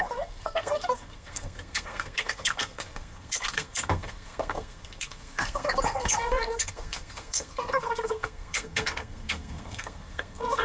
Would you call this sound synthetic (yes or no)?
yes